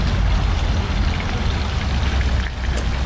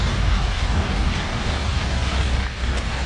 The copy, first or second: second